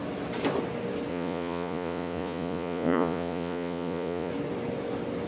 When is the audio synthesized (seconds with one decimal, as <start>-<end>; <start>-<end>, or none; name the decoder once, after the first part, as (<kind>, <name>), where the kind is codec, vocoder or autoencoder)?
1.1-4.3 (vocoder, Vocos)